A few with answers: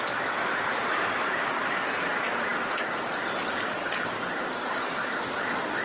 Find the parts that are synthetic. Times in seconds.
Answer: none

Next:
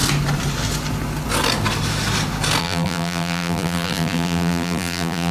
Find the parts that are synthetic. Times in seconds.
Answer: 2.6-5.3 (vocoder, BigVGAN v2)

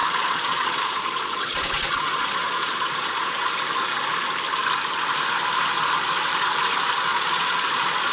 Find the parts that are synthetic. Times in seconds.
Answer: 0.0-3.5 (vocoder, Vocos); 7.1-8.1

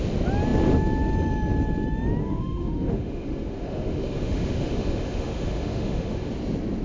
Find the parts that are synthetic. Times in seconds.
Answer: 2.2-6.3 (autoencoder, DAC-VAE)